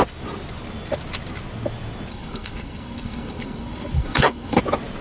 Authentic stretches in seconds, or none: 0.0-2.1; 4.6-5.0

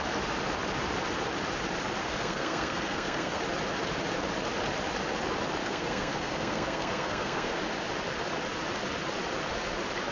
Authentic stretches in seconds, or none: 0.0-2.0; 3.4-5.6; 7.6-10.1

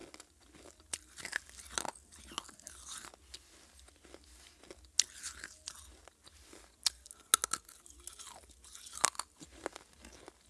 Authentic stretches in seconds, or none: 0.0-10.5

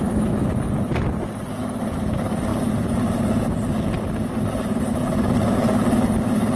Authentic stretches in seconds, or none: 0.0-6.6

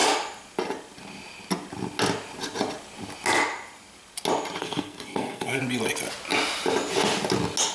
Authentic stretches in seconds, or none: 0.0-4.6; 5.6-7.7